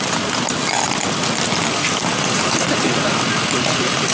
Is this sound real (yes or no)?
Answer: yes